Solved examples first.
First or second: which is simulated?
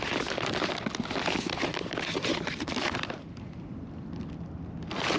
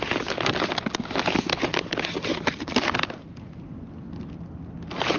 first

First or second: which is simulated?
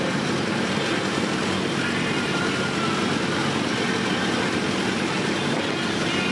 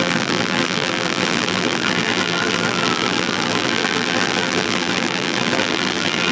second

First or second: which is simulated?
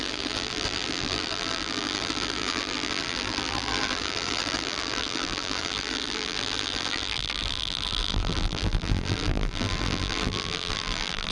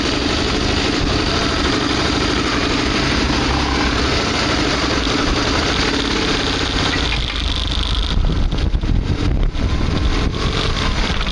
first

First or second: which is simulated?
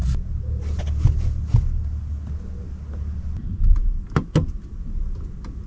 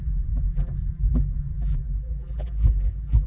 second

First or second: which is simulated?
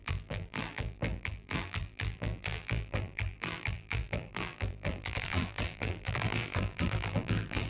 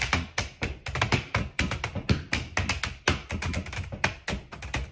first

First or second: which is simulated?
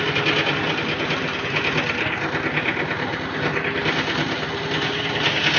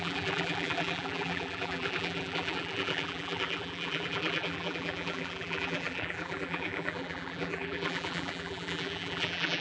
second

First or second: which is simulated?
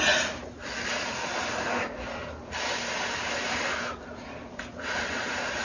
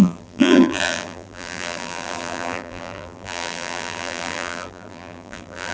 second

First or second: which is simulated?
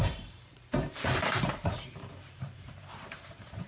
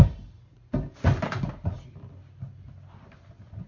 first